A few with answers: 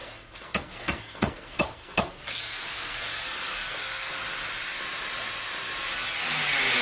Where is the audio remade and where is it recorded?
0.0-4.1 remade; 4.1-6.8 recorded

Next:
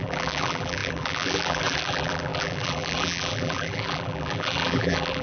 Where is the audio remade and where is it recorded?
0.0-5.2 remade

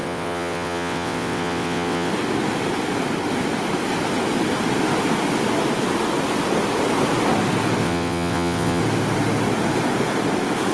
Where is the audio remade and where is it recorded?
0.0-2.1 remade; 2.1-7.8 recorded; 7.8-8.8 remade; 8.8-10.7 recorded

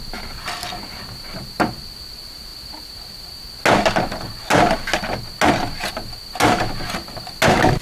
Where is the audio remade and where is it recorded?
0.0-7.8 recorded

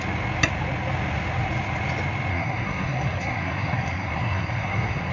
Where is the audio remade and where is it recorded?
0.0-2.3 recorded; 2.3-5.1 remade

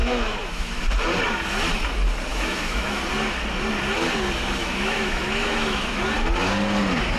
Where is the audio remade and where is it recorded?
0.0-0.8 remade; 0.8-2.3 recorded; 2.3-3.0 remade; 3.0-4.6 recorded; 4.6-6.0 remade; 6.0-7.2 recorded

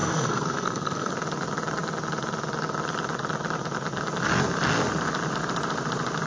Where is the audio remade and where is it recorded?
0.0-1.1 remade; 1.1-6.3 recorded

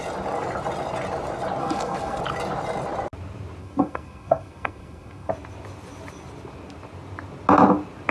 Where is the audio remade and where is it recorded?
0.0-1.6 recorded; 1.6-2.2 remade; 2.2-3.6 recorded; 3.6-5.3 remade; 5.3-8.1 recorded